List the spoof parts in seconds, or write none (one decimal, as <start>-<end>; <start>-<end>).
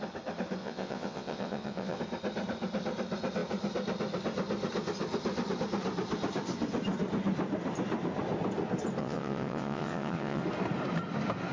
0.6-2.0; 9.0-10.4